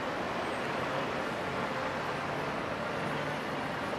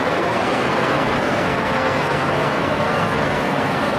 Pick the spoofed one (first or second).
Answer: second